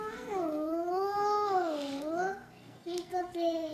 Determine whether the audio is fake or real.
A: fake